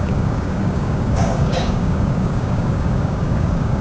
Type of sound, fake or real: fake